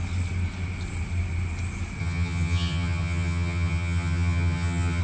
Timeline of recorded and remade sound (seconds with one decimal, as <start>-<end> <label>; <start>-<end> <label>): 0.0-2.0 recorded; 2.0-5.0 remade